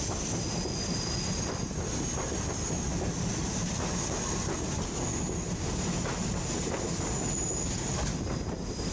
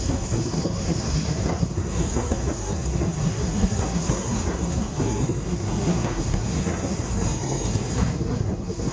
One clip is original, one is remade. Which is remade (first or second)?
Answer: second